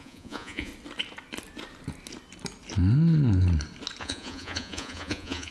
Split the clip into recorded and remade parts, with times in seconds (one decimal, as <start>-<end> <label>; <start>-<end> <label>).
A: 0.0-0.7 remade; 0.7-4.0 recorded; 4.0-5.5 remade